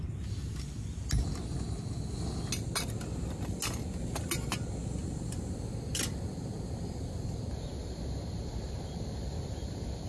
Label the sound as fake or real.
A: real